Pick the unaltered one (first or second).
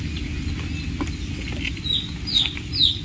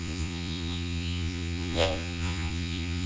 first